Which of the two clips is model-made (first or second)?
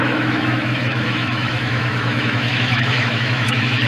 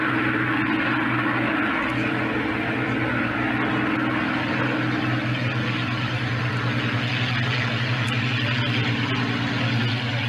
first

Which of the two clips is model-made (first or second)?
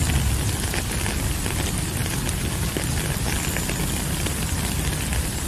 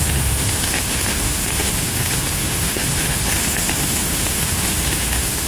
second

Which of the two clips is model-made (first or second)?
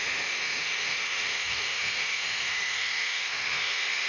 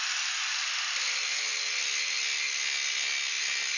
first